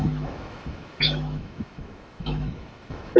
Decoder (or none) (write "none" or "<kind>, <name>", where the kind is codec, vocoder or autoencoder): autoencoder, DAC-VAE